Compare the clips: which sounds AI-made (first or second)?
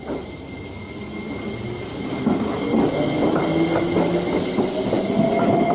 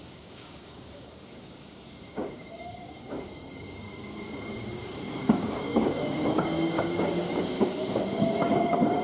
second